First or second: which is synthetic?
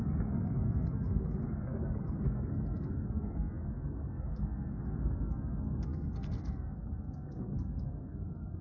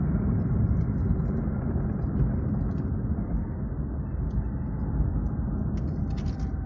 first